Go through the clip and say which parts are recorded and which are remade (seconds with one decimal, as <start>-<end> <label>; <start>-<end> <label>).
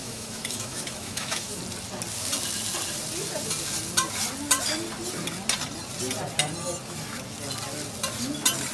0.0-1.6 remade; 1.6-8.7 recorded